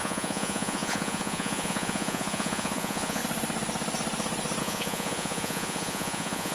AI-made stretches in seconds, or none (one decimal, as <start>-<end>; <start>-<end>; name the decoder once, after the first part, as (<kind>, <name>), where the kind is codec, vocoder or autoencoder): 0.0-3.2 (vocoder, Vocos); 4.6-6.5